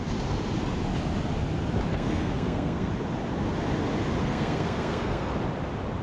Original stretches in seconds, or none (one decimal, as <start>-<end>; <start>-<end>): 0.0-1.9; 2.9-4.2; 5.3-6.0